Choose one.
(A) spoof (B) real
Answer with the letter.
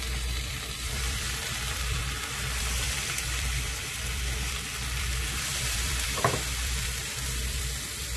A